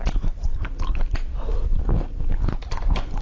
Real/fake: real